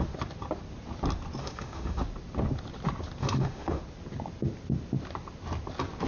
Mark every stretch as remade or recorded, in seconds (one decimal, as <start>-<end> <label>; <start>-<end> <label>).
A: 0.0-1.4 recorded; 1.4-2.0 remade; 2.0-3.2 recorded; 3.2-3.8 remade; 3.8-6.1 recorded